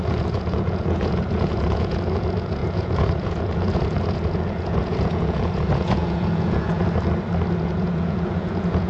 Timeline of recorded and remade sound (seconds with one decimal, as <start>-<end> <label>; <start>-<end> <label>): 0.0-6.8 remade; 6.8-7.5 recorded; 7.5-8.9 remade